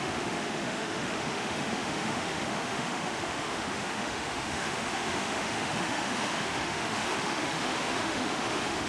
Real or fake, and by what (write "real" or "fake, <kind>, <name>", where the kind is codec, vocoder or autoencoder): fake, autoencoder, DAC-VAE